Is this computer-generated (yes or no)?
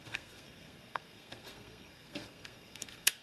yes